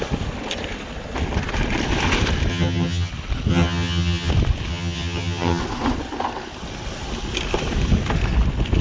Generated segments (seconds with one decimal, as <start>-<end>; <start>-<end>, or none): 2.5-3.1; 3.5-4.3; 4.7-5.6